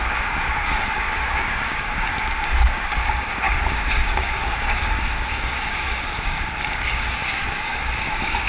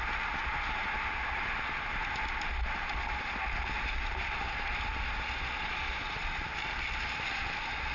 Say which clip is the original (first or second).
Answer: second